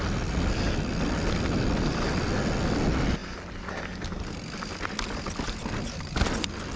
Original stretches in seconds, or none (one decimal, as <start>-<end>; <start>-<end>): 0.0-6.8